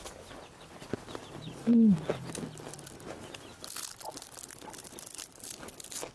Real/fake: real